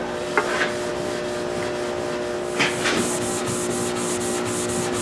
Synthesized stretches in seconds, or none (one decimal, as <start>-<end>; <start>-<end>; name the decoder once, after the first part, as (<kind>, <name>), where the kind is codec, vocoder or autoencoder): none